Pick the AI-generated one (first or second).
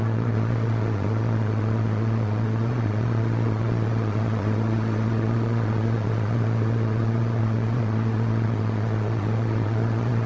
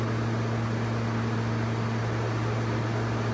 first